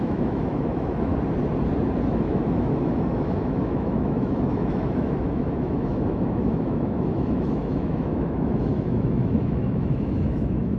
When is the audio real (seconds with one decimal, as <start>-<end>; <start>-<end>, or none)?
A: 1.1-2.1